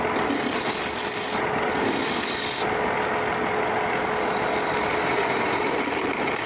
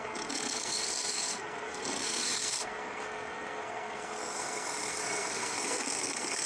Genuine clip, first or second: first